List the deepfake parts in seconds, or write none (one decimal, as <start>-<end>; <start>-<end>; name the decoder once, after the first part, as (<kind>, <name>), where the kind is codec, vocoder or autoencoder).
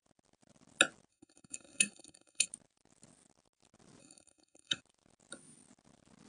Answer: 1.1-2.5 (codec, SNAC); 4.0-4.8